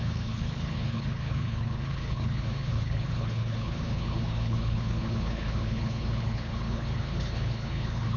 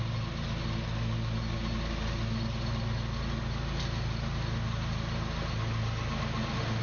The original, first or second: second